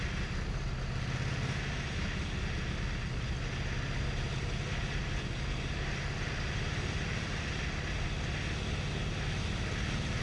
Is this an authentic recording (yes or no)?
yes